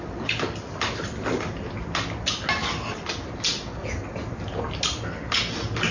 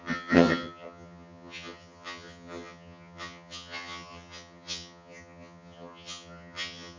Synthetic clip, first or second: second